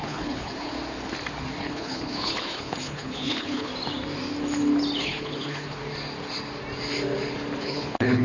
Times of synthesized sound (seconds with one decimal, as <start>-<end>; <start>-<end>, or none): 0.0-0.7; 1.6-3.7; 5.0-5.8; 7.6-8.2

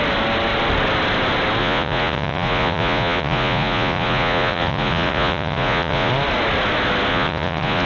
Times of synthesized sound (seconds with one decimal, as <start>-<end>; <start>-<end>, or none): 1.6-6.1; 7.1-7.9

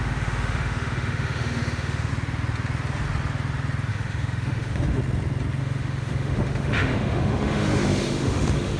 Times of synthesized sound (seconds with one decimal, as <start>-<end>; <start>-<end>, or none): 0.0-2.1; 3.9-5.0; 5.6-8.8